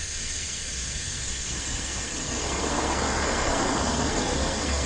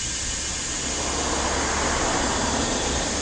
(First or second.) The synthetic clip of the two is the first